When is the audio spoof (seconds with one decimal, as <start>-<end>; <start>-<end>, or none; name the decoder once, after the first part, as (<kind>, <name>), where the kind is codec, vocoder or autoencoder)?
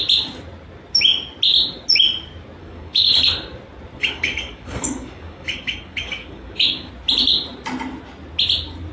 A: 2.6-3.2 (codec, DAC); 4.0-6.9